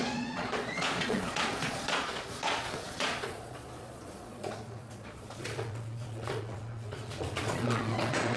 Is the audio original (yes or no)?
no